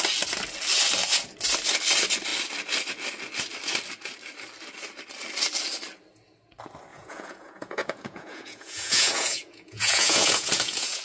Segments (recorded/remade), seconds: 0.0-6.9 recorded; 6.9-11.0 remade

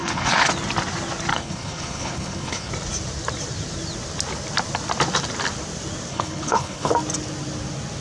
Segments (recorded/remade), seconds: 0.0-0.5 remade; 0.5-1.3 recorded; 1.3-2.7 remade; 2.7-6.1 recorded; 6.1-6.9 remade; 6.9-8.0 recorded

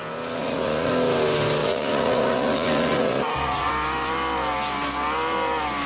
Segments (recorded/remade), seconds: 0.0-0.4 recorded; 0.4-0.9 remade; 0.9-1.6 recorded; 1.6-3.7 remade; 3.7-5.9 recorded

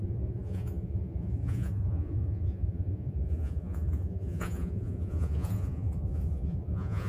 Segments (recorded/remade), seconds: 0.0-7.1 remade

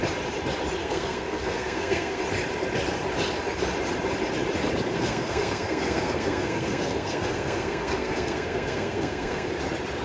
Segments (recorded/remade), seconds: 0.0-0.8 recorded; 0.8-2.2 remade; 2.2-4.9 recorded; 4.9-9.5 remade; 9.5-10.0 recorded

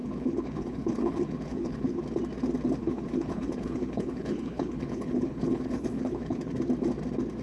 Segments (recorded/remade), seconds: 0.0-2.0 remade; 2.0-2.8 recorded; 2.8-6.6 remade; 6.6-7.4 recorded